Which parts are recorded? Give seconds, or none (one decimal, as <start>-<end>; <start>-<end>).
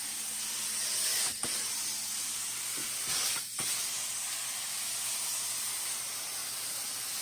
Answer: 0.0-7.2